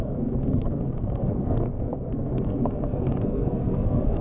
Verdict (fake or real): fake